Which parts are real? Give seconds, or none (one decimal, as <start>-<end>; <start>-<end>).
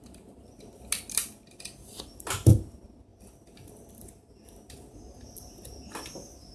0.0-6.5